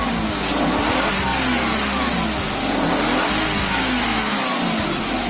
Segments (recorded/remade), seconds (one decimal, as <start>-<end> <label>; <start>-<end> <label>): 0.0-5.3 recorded